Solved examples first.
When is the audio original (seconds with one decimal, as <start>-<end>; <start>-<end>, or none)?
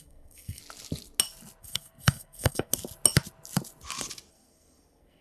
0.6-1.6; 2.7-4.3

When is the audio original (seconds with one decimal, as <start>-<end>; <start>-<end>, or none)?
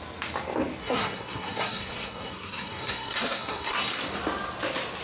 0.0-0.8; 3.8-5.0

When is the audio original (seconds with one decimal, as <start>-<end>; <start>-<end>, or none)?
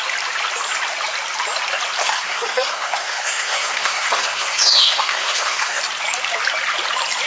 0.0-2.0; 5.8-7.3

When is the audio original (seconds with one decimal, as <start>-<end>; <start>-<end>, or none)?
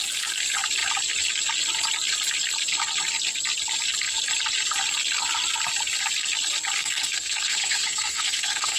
0.0-6.8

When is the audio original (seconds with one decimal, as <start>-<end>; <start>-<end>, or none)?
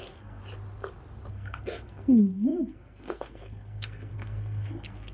0.4-1.3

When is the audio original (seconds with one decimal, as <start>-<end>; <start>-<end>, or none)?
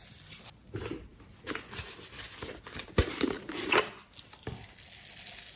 0.0-5.6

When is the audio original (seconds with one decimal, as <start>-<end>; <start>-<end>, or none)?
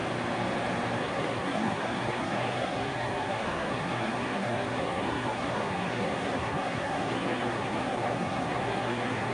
0.0-1.0